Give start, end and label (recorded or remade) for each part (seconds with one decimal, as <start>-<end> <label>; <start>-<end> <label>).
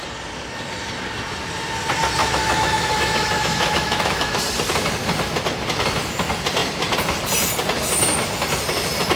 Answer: 0.0-2.2 recorded; 2.2-4.4 remade; 4.4-9.2 recorded